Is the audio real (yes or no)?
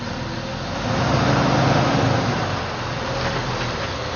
yes